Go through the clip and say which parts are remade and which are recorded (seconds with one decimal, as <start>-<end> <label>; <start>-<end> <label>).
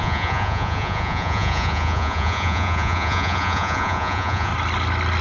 0.0-4.5 remade; 4.5-5.2 recorded